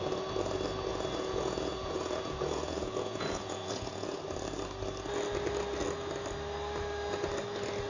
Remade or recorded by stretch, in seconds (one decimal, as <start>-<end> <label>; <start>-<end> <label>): 0.0-0.9 recorded; 0.9-4.2 remade; 4.2-7.9 recorded